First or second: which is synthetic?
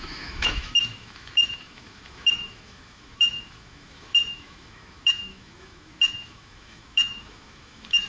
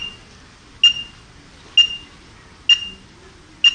first